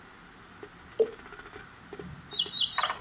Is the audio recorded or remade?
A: recorded